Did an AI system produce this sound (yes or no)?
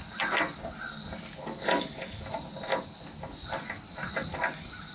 no